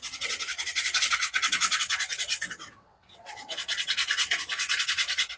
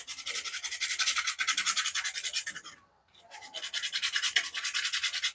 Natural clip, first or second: second